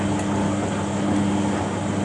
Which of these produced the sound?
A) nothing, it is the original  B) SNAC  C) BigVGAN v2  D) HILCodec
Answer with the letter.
A